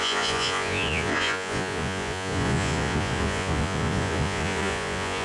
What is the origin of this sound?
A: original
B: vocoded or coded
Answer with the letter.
B